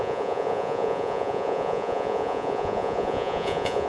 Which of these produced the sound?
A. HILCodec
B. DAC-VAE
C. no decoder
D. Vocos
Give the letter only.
D